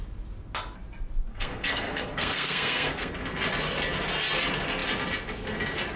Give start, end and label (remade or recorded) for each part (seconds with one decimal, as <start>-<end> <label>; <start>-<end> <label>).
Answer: 0.0-1.3 recorded; 1.3-3.1 remade; 3.1-6.0 recorded